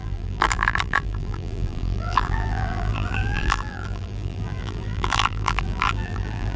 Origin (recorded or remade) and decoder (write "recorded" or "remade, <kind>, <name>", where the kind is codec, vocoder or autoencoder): remade, vocoder, BigVGAN v2